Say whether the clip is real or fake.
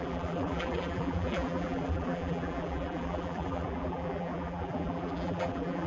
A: fake